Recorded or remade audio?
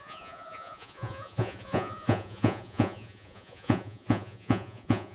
remade